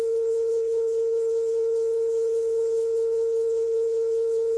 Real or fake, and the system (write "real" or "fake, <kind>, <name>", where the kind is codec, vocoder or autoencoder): fake, codec, HILCodec